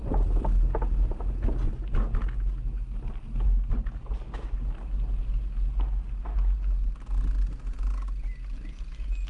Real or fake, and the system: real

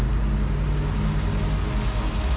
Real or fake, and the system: real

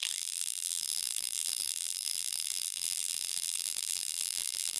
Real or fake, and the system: fake, vocoder, BigVGAN v2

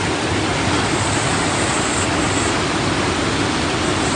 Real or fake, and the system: real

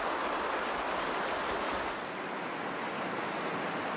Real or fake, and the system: real